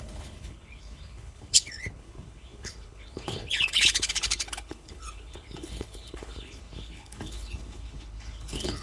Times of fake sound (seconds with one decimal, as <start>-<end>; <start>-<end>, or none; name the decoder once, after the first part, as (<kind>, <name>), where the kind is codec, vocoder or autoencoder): 0.0-8.8 (codec, HILCodec)